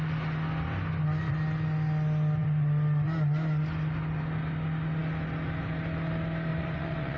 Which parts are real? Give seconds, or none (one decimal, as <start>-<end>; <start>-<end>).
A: 0.0-6.5